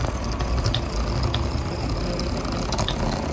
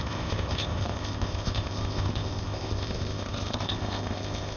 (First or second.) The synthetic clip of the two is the second